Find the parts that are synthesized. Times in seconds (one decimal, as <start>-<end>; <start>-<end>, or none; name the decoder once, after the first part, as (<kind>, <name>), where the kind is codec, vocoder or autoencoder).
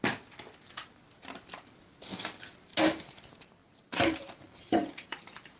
3.6-5.6 (vocoder, BigVGAN v2)